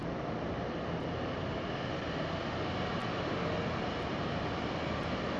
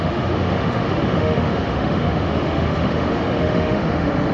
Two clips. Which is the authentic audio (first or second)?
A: first